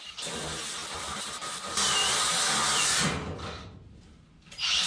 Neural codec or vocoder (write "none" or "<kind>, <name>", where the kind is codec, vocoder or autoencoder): none